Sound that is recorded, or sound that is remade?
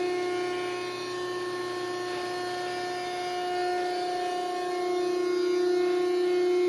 recorded